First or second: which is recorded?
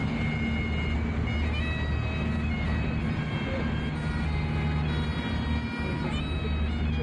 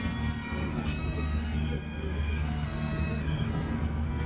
first